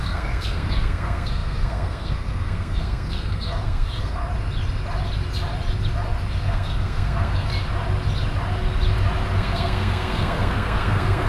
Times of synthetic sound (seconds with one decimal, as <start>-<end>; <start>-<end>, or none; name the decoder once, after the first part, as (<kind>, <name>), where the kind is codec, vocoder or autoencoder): 0.0-4.2 (codec, SNAC); 6.4-7.5; 9.3-11.3